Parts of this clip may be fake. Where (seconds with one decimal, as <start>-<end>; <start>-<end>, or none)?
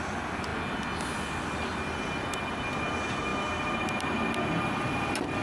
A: none